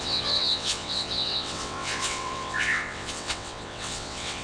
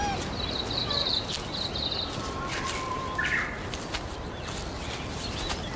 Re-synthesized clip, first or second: first